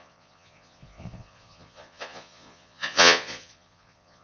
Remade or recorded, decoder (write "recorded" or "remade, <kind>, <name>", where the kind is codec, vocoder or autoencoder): remade, vocoder, Vocos